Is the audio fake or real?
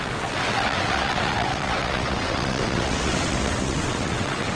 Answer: fake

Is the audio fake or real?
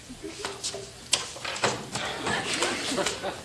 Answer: real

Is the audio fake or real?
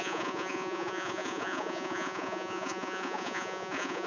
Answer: fake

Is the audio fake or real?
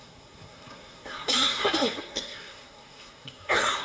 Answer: fake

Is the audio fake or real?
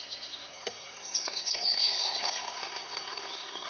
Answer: fake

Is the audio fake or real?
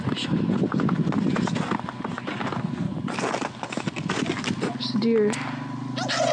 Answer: real